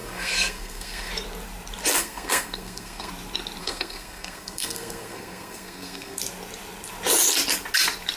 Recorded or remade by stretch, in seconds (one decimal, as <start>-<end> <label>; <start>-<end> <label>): 0.0-1.1 remade; 1.1-2.0 recorded; 2.0-3.1 remade; 3.1-3.6 recorded; 3.6-6.2 remade; 6.2-8.2 recorded